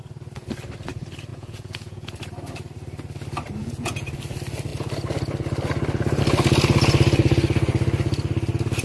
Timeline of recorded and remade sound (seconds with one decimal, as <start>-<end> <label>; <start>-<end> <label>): 0.0-1.3 recorded; 1.3-2.2 remade; 2.2-3.6 recorded; 3.6-4.1 remade; 4.1-8.8 recorded